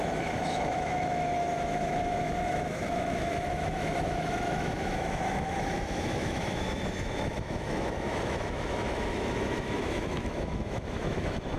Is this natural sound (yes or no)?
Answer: no